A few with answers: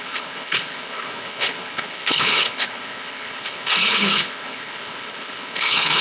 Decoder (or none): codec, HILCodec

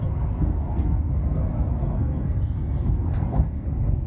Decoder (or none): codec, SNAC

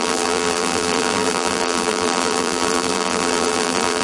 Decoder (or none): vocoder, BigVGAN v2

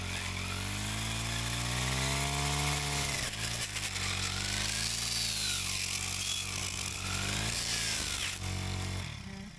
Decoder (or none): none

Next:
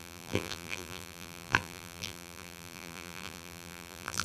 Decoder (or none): vocoder, BigVGAN v2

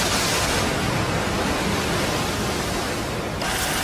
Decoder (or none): none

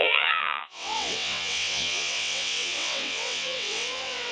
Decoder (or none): vocoder, WaveNeXt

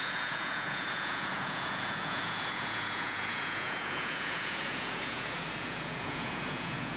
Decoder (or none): vocoder, Vocos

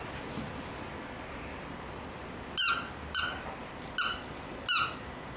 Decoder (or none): none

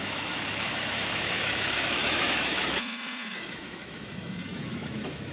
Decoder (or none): autoencoder, DAC-VAE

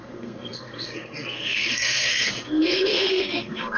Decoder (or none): codec, SNAC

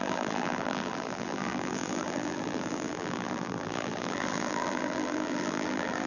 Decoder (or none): vocoder, BigVGAN v2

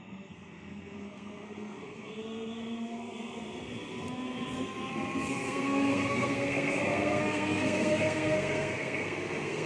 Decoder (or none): codec, SNAC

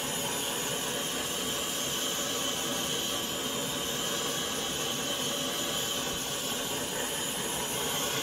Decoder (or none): none